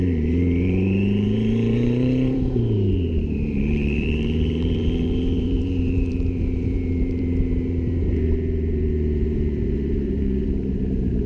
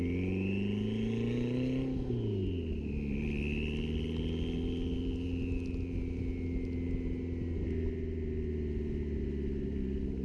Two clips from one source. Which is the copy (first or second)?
first